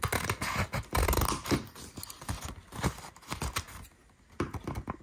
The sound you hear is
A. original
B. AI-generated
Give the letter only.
A